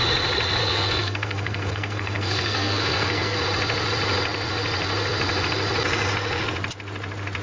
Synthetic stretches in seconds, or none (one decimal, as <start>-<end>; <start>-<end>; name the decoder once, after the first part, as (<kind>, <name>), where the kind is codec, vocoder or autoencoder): 0.6-3.4 (codec, SNAC)